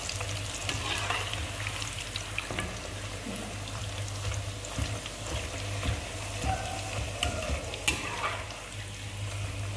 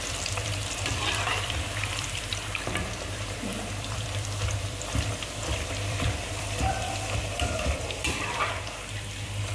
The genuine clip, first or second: first